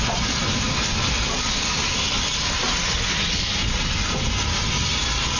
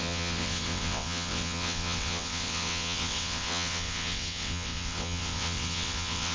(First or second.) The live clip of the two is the first